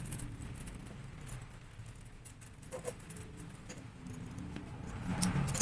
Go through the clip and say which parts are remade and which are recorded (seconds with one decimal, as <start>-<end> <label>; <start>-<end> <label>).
0.0-5.6 recorded